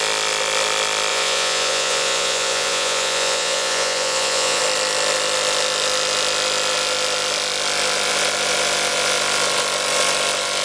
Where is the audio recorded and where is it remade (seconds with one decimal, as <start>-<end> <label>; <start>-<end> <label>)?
0.0-1.1 recorded; 1.1-4.6 remade; 4.6-10.6 recorded